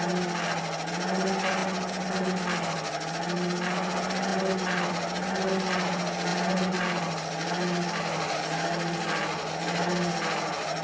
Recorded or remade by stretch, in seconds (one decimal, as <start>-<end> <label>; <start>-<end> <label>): 0.0-10.8 recorded